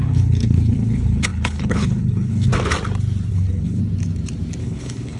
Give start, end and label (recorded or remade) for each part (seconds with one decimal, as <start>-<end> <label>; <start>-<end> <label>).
0.0-2.5 remade; 2.5-3.3 recorded; 3.3-3.8 remade; 3.8-4.6 recorded; 4.6-5.2 remade